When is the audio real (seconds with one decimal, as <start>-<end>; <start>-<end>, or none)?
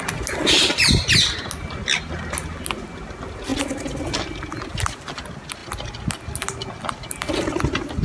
0.0-8.0